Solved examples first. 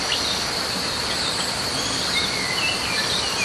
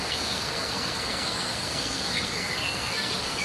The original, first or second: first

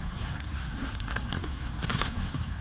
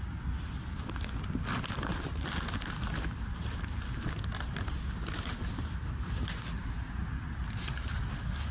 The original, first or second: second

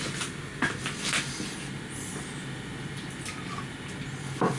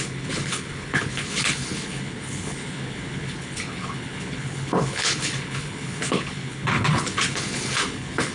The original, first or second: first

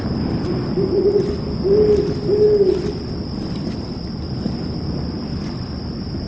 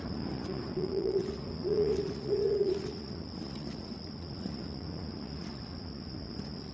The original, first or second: first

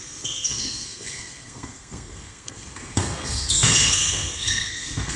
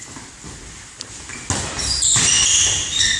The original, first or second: second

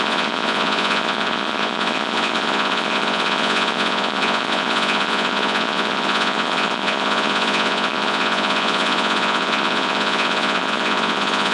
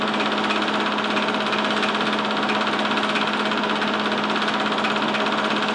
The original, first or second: second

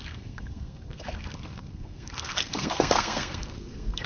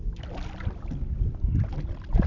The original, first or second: second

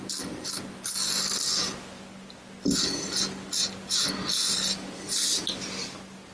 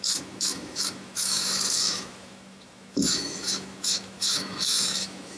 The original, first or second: first